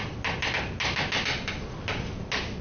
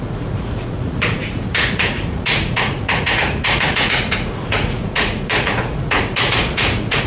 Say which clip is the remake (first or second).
second